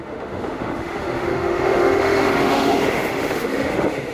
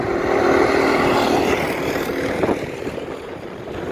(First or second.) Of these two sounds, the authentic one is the second